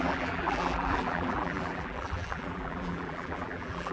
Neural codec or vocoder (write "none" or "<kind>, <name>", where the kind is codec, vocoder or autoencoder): vocoder, BigVGAN v2